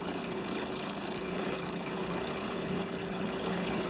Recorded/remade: remade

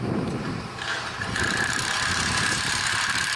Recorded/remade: remade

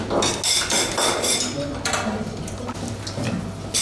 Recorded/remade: recorded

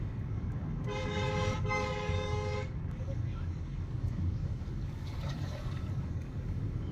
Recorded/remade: remade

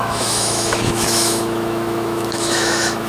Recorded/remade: remade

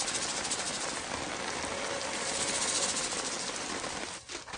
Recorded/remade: recorded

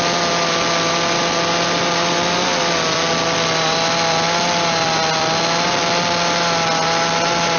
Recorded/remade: recorded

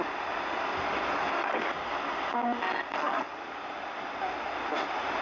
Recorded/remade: recorded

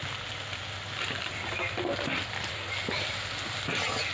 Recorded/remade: recorded